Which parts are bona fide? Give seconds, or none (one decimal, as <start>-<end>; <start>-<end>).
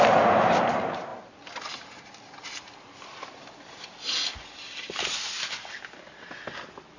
0.0-7.0